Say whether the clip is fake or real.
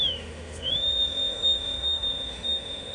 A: fake